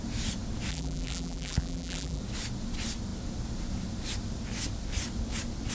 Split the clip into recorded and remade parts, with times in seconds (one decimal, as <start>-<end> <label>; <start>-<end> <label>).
0.0-0.7 recorded; 0.7-2.2 remade; 2.2-5.7 recorded